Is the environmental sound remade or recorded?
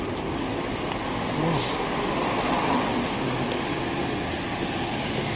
recorded